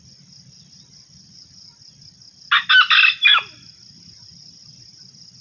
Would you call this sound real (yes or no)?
yes